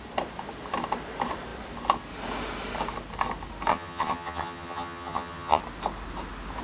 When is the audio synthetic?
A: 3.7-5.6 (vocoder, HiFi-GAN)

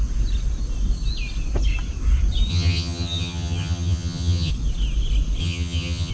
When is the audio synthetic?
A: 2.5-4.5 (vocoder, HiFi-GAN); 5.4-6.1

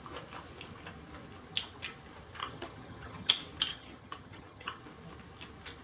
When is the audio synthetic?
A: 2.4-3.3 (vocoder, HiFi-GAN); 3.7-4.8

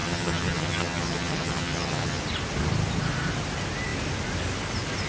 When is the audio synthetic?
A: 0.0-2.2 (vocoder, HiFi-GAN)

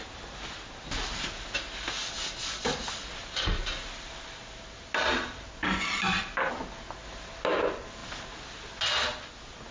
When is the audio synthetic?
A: none

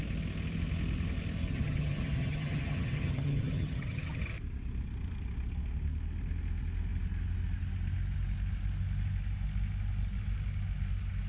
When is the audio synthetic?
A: 1.5-4.2 (vocoder, HiFi-GAN)

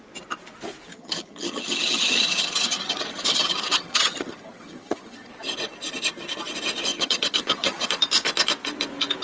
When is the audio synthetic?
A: 0.9-5.3 (vocoder, HiFi-GAN); 6.9-7.9

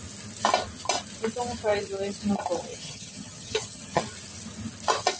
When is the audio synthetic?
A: 2.7-4.0 (vocoder, HiFi-GAN)